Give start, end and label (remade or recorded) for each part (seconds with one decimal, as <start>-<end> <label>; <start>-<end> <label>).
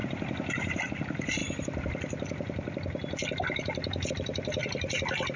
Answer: 0.0-5.4 recorded